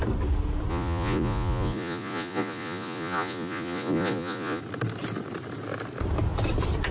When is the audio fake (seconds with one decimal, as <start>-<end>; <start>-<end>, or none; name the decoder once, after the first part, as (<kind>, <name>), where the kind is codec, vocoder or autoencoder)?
0.7-4.6 (vocoder, Vocos)